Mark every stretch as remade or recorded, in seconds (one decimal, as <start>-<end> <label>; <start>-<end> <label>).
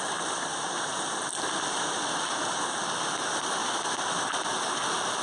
0.0-5.2 recorded